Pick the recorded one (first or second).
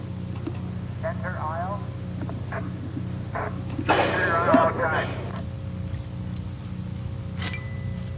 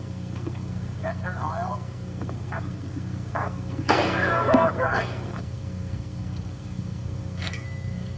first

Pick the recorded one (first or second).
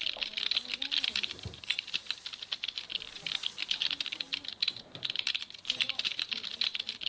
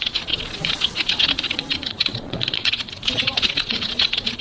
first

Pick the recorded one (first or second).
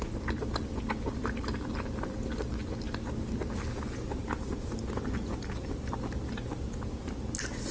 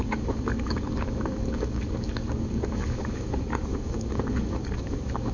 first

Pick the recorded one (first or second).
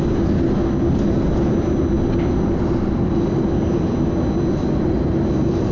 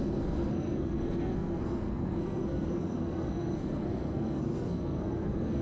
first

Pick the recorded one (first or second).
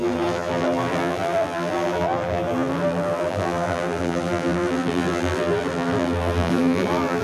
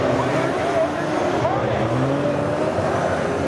second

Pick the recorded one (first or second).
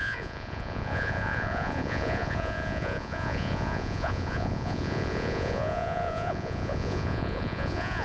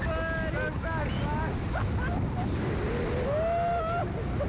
second